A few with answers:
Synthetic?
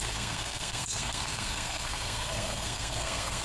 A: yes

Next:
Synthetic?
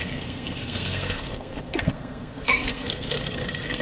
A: yes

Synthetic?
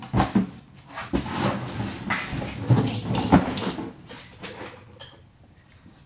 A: no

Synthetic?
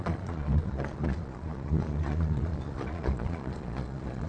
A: yes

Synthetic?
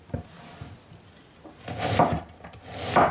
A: no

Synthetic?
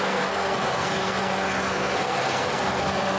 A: yes